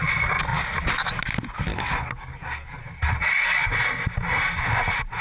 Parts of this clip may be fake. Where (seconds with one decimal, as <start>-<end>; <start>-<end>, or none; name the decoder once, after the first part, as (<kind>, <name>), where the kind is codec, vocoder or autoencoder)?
1.7-2.8 (codec, DAC)